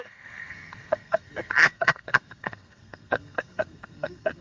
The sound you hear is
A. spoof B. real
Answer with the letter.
A